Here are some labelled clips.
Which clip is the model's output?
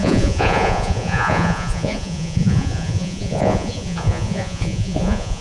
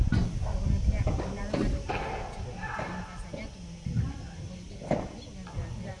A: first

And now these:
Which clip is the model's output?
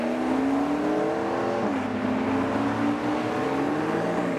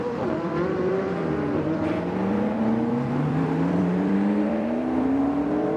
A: second